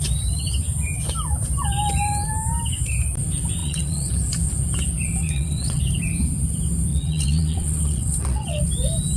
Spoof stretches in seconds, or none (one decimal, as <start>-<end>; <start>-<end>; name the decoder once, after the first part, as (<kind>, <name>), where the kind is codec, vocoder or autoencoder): 3.6-4.1 (vocoder, WaveNeXt); 5.2-5.8; 6.9-8.6